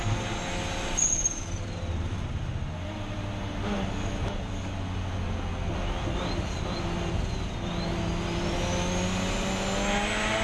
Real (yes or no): yes